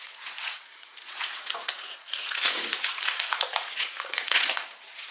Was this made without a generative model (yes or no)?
no